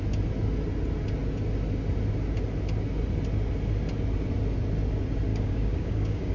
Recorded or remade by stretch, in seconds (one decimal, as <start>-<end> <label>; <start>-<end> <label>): 0.0-5.3 recorded; 5.3-6.3 remade